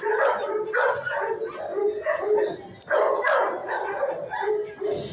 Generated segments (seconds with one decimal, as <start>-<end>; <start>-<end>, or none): 1.7-2.2